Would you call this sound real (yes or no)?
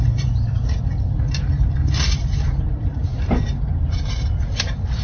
no